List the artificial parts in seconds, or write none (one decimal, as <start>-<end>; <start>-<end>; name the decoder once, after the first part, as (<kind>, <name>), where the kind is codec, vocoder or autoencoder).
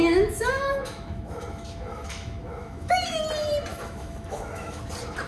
0.0-3.2 (autoencoder, DAC-VAE); 3.7-4.8